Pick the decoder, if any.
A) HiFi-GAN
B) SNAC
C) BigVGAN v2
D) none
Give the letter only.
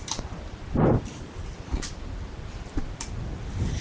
D